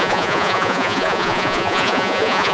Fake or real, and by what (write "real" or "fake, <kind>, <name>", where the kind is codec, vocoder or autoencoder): fake, vocoder, Vocos